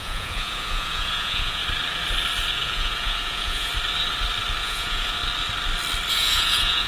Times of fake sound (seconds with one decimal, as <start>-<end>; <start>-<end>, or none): 0.0-1.6; 2.5-3.7; 4.6-5.2; 6.1-6.9